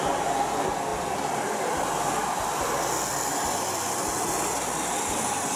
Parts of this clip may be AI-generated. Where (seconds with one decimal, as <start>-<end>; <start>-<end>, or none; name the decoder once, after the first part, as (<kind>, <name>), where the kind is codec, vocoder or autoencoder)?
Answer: none